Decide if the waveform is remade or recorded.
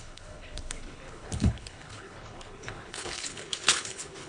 remade